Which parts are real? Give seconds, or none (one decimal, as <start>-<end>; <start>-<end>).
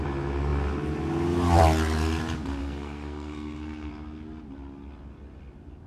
0.0-2.6; 3.9-5.9